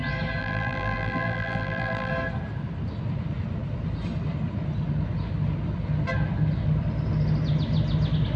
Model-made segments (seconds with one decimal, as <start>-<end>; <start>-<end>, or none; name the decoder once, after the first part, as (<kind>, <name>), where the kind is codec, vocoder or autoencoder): 0.4-2.1 (vocoder, BigVGAN v2)

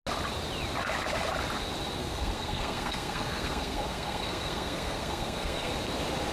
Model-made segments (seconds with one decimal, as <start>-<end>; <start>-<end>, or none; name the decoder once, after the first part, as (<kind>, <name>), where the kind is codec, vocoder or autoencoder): 2.0-5.7 (codec, SNAC)

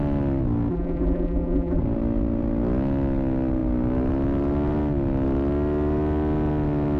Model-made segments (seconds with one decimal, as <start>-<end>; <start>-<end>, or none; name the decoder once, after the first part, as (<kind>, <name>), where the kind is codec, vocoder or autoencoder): 0.7-1.8 (vocoder, BigVGAN v2)

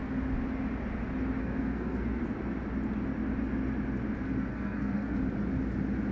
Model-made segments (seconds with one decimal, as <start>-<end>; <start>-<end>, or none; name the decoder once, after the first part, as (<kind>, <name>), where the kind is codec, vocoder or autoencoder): 1.4-2.2 (codec, SNAC); 4.5-5.1